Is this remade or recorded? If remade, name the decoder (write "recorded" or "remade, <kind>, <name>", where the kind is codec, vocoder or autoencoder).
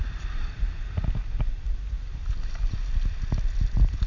recorded